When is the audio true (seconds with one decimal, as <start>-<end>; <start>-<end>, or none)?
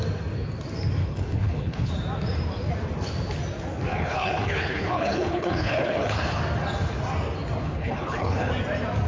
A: 0.0-1.0; 1.9-3.9; 6.4-7.6; 8.5-9.1